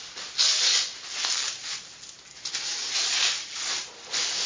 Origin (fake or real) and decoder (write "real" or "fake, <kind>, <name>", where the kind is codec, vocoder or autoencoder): real